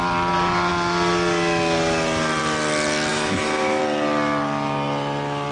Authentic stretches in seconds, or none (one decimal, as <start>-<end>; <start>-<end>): 0.0-3.1; 3.8-5.5